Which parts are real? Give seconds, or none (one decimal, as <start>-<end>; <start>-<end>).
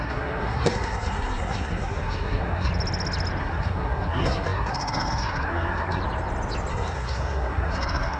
2.7-3.4; 6.0-6.7